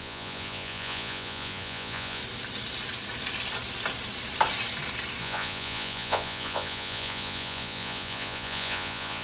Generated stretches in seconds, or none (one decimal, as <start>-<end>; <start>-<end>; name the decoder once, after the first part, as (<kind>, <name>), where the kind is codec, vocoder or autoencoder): 0.0-2.2 (vocoder, Vocos); 5.2-9.2